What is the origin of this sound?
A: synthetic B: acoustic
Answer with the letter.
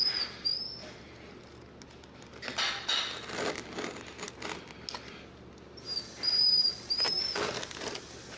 B